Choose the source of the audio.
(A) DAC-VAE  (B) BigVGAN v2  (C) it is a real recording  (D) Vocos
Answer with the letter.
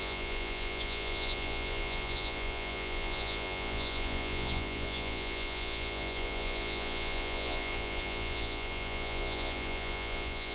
D